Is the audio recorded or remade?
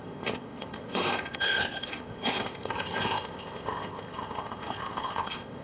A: remade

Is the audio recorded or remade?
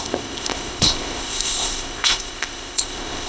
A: remade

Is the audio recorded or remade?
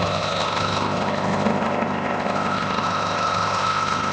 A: remade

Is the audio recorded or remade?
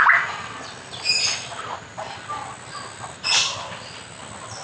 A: recorded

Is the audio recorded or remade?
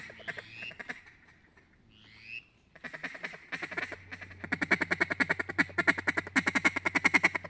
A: recorded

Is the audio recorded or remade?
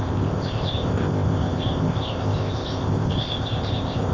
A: remade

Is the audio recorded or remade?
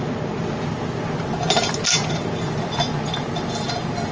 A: recorded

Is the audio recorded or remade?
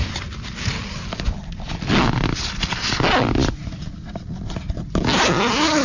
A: recorded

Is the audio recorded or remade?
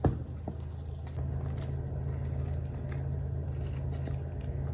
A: recorded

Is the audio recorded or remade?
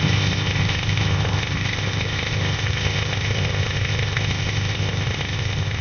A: remade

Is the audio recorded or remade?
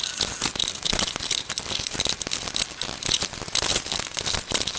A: recorded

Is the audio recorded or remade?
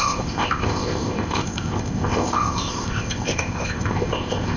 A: remade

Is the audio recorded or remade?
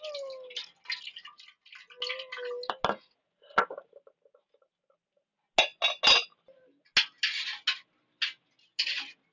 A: recorded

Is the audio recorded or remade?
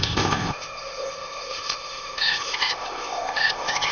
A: remade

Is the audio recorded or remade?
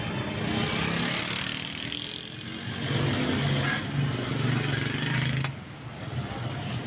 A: recorded